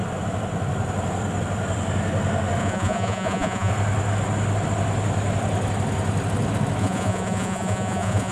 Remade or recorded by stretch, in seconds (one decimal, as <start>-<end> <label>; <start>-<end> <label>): 0.0-2.6 recorded; 2.6-3.7 remade; 3.7-6.8 recorded; 6.8-8.3 remade